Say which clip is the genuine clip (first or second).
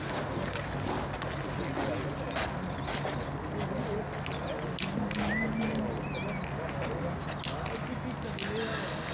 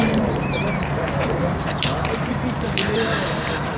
first